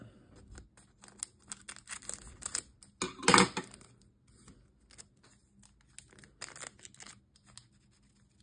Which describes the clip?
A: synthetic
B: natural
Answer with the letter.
B